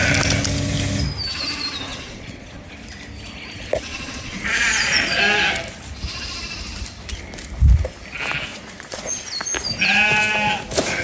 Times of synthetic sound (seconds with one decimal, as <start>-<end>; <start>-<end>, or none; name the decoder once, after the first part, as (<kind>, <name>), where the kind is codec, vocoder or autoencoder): 1.9-2.7 (vocoder, Vocos); 3.9-5.2; 8.5-9.2